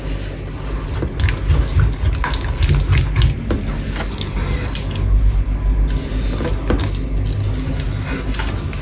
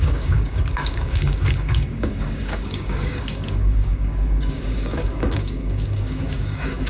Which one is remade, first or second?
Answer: second